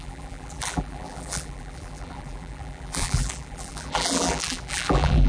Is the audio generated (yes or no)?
yes